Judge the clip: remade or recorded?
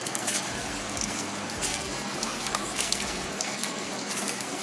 remade